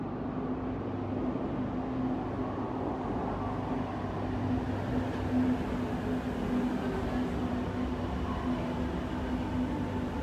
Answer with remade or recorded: recorded